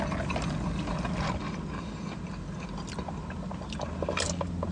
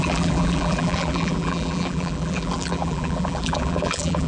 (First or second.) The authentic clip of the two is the first